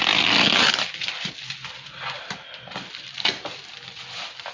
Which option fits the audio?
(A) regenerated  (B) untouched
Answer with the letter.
B